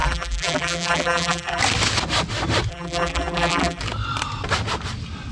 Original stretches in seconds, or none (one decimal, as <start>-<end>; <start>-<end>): 1.6-2.7; 3.8-5.3